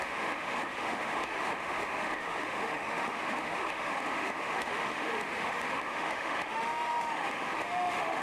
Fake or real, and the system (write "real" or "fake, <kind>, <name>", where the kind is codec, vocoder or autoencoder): fake, autoencoder, DAC-VAE